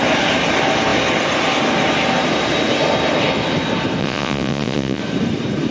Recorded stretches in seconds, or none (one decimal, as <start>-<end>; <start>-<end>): 0.0-4.0; 5.0-5.7